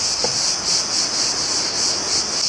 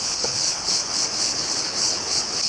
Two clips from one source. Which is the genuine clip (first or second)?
first